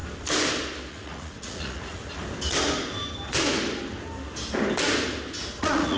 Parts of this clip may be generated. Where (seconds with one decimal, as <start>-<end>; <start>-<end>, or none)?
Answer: 0.9-2.0; 5.6-6.0